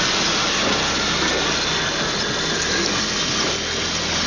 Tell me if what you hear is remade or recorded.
recorded